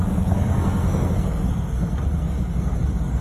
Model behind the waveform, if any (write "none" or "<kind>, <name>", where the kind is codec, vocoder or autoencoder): codec, SNAC